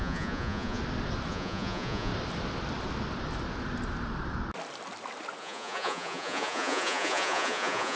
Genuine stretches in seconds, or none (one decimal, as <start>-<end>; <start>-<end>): 0.8-1.3; 2.1-5.4